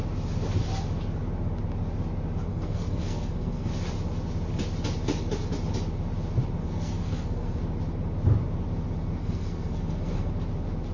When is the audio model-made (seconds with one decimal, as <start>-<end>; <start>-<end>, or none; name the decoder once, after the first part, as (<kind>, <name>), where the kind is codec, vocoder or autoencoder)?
2.5-3.7 (codec, SNAC); 6.6-7.6; 9.2-10.3